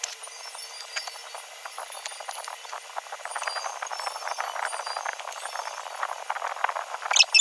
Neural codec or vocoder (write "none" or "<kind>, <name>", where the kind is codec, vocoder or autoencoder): vocoder, BigVGAN v2